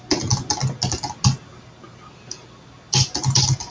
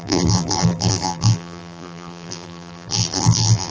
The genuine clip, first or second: first